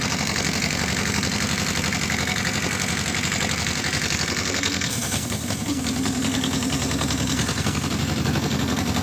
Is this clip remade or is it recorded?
remade